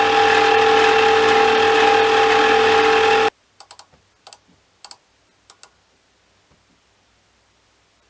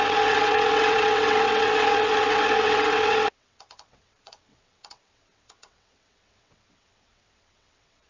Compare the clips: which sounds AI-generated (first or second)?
second